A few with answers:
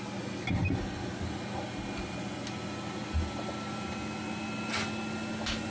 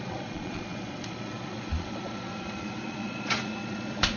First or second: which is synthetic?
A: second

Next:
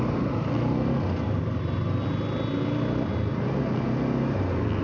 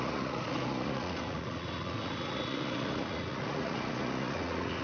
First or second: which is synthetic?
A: second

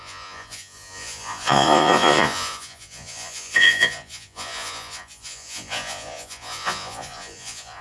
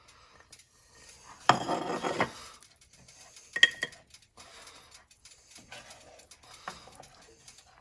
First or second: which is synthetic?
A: first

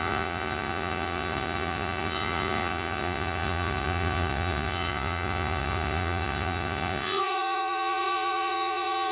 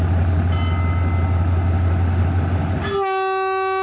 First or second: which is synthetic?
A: first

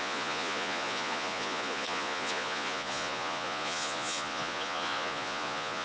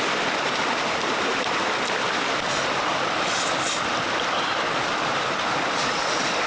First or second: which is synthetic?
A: first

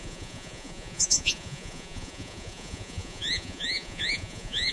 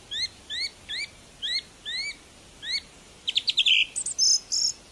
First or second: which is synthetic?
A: first